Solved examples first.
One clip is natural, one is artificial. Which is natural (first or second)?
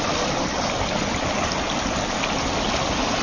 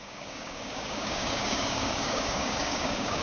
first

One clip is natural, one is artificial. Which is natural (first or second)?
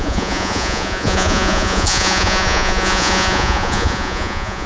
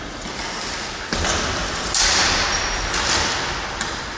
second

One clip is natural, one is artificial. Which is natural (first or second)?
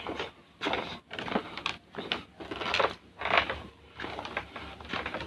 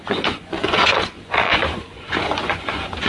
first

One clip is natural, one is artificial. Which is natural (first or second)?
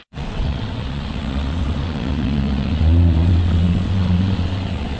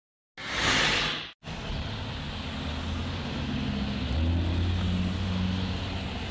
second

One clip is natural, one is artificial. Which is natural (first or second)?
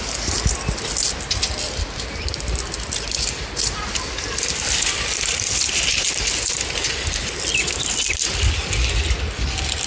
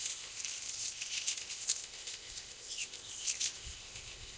first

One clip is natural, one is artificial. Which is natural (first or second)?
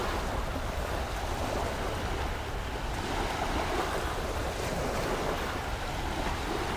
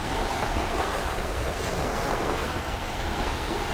first